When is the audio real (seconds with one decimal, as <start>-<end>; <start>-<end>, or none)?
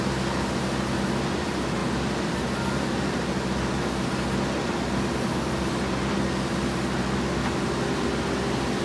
0.0-8.8